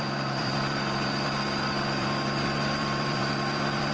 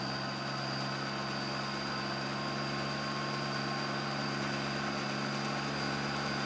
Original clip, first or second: second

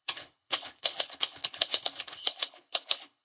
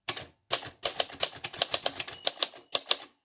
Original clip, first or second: second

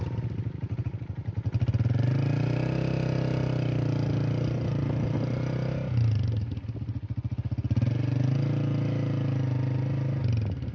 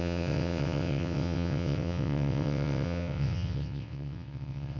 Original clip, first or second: first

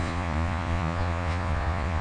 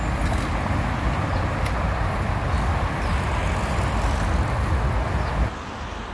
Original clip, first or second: second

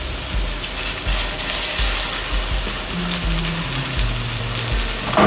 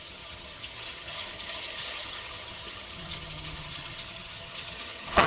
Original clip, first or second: first